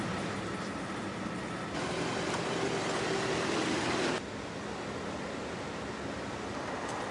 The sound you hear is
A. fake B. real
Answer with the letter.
B